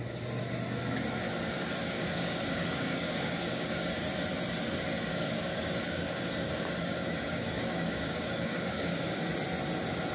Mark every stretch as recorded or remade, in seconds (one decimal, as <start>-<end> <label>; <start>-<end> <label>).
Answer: 0.0-1.8 recorded; 1.8-3.9 remade; 3.9-5.1 recorded; 5.1-9.2 remade; 9.2-10.1 recorded